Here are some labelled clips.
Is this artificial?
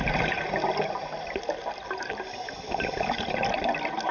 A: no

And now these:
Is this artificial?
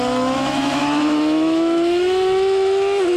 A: yes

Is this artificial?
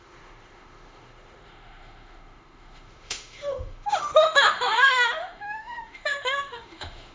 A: yes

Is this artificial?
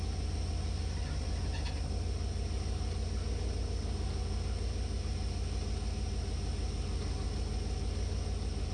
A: no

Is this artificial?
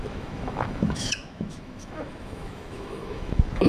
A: yes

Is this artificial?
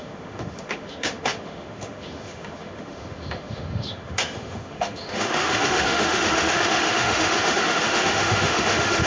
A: yes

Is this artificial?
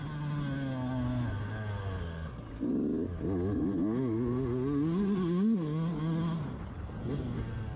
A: no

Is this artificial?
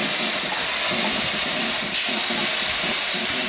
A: no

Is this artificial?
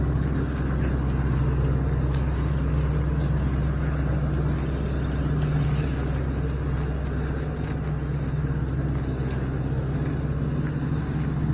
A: no